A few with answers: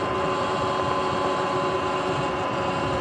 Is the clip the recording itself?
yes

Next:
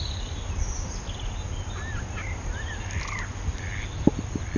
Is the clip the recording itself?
yes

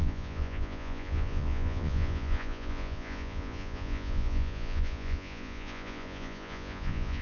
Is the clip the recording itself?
no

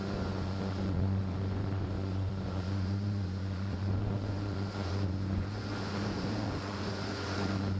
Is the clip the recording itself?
no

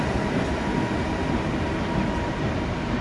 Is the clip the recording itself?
yes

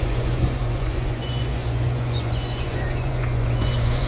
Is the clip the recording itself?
no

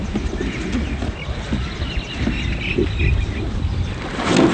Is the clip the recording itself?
yes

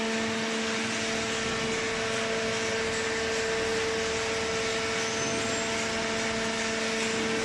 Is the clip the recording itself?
yes